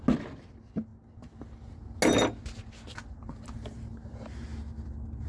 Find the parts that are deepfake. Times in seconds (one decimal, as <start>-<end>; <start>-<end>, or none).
none